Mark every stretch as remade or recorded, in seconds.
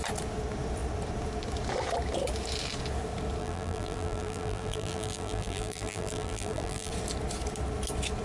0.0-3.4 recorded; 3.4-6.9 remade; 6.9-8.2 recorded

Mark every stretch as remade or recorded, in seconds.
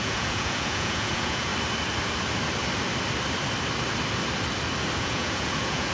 0.0-1.5 remade; 1.5-5.0 recorded; 5.0-5.9 remade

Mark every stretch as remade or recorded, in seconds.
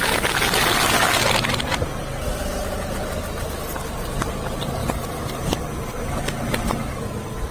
0.0-7.5 recorded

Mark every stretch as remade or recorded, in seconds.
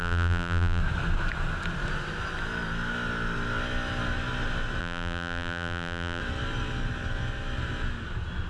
0.0-0.8 remade; 0.8-4.8 recorded; 4.8-6.2 remade; 6.2-8.5 recorded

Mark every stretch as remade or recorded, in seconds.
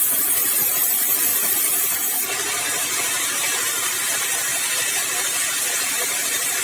0.0-1.3 remade; 1.3-2.6 recorded; 2.6-4.5 remade; 4.5-5.9 recorded; 5.9-6.6 remade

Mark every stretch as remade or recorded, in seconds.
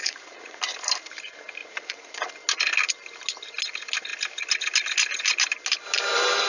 0.0-0.6 remade; 0.6-1.6 recorded; 1.6-2.2 remade; 2.2-6.5 recorded